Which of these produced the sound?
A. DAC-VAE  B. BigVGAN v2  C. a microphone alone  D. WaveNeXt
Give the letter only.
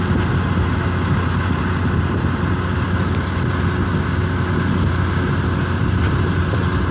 C